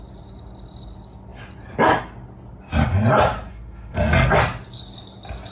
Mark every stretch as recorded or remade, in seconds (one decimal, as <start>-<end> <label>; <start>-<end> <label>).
0.0-3.5 recorded; 3.5-4.4 remade; 4.4-5.5 recorded